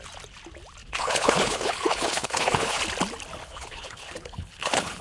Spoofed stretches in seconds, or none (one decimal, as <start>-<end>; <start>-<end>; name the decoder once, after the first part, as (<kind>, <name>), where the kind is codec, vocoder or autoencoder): 0.8-2.8 (codec, HILCodec); 3.4-5.0